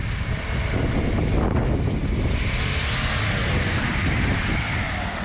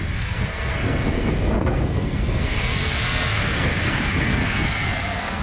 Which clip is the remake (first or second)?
second